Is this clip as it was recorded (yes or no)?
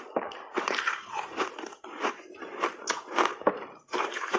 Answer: no